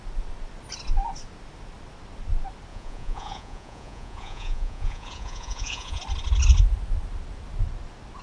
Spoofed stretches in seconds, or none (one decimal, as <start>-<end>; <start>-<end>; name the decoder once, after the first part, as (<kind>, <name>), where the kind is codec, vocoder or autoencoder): 2.7-6.0 (vocoder, Vocos)